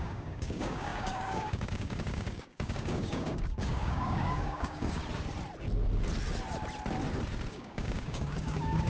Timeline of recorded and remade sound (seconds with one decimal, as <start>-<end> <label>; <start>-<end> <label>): 0.0-5.0 remade; 5.0-7.5 recorded; 7.5-8.9 remade